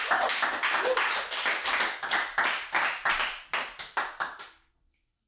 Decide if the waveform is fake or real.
real